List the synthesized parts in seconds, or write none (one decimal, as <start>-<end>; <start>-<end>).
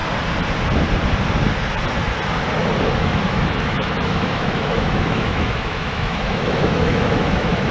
3.0-7.7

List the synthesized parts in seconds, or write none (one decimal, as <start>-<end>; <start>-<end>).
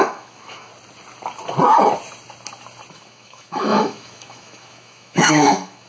0.0-0.7; 2.9-5.9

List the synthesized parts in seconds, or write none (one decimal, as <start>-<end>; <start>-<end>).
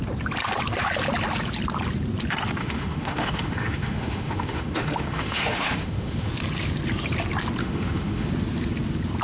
2.6-6.3; 7.6-8.3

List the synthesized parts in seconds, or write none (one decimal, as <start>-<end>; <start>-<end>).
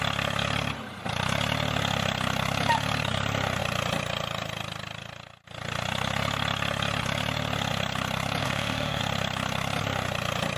8.4-9.0